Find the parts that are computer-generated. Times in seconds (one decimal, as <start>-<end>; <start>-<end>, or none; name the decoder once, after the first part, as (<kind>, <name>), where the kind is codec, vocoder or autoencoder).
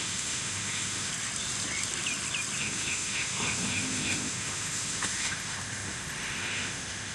0.0-1.1 (autoencoder, DAC-VAE); 2.6-7.1